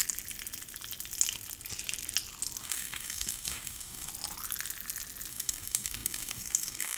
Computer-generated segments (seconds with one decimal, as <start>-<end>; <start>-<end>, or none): 2.6-4.1; 5.3-7.0